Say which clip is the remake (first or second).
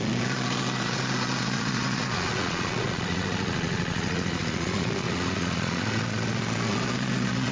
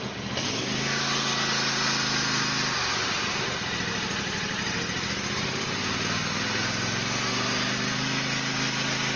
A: first